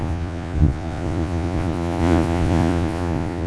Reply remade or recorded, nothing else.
remade